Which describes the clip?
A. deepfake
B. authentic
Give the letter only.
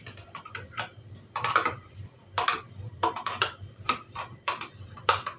A